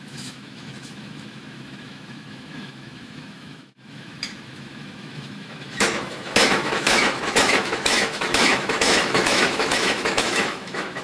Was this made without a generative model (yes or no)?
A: no